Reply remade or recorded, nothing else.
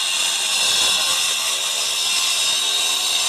recorded